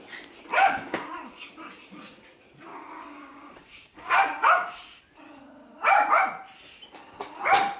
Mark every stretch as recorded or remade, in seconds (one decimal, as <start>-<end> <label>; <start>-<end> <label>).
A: 0.0-0.5 recorded; 0.5-1.1 remade; 1.1-2.7 recorded; 2.7-5.0 remade; 5.0-7.8 recorded